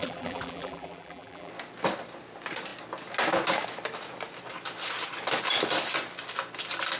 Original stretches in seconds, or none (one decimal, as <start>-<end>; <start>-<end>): 1.5-7.0